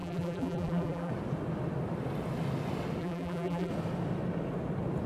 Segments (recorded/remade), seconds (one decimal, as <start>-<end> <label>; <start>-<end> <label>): 0.0-1.1 remade; 1.1-3.0 recorded; 3.0-3.7 remade; 3.7-5.1 recorded